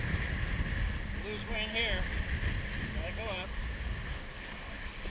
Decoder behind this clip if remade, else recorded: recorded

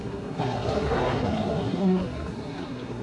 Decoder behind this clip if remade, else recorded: remade, codec, SNAC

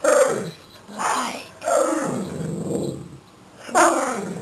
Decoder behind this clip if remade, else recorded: recorded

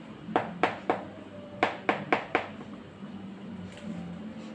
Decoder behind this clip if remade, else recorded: recorded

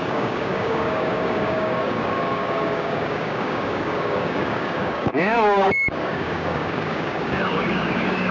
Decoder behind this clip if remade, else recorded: remade, codec, DAC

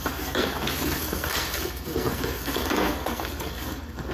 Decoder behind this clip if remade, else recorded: remade, codec, SNAC